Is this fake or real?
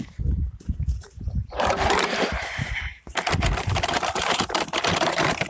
fake